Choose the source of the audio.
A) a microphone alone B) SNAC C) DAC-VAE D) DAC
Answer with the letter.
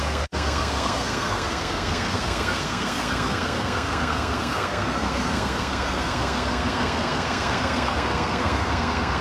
B